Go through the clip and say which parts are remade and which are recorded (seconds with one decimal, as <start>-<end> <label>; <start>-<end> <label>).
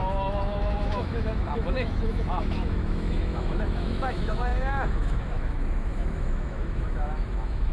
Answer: 0.0-7.7 remade